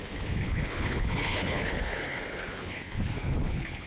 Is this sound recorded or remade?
remade